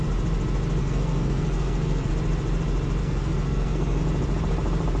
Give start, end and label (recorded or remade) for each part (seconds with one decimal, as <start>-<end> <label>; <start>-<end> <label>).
0.0-0.8 recorded; 0.8-2.1 remade; 2.1-3.0 recorded; 3.0-4.0 remade; 4.0-5.0 recorded